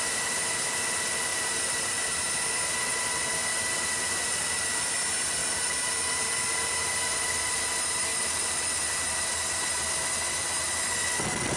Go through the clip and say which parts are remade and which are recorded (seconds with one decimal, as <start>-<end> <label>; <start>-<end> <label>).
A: 0.0-1.3 recorded; 1.3-2.0 remade; 2.0-3.5 recorded; 3.5-4.9 remade; 4.9-5.4 recorded; 5.4-6.9 remade; 6.9-8.1 recorded; 8.1-9.3 remade; 9.3-11.6 recorded

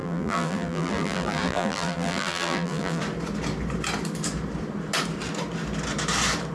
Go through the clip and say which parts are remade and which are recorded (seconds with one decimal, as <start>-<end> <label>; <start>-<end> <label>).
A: 0.0-3.0 remade; 3.0-6.5 recorded

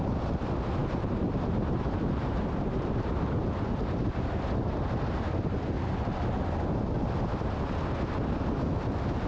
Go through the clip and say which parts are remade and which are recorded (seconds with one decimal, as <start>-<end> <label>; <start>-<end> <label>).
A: 0.0-0.8 recorded; 0.8-4.3 remade; 4.3-9.3 recorded

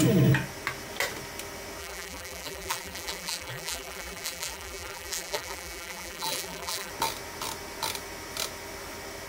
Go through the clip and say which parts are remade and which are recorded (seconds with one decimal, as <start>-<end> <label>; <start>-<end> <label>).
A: 0.0-1.8 recorded; 1.8-6.9 remade; 6.9-9.3 recorded

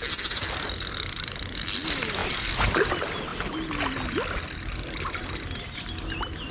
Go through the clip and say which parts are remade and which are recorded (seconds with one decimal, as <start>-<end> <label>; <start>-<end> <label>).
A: 0.0-6.5 recorded

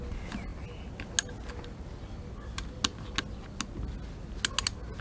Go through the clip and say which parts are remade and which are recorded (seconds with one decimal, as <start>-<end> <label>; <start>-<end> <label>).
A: 0.0-5.0 recorded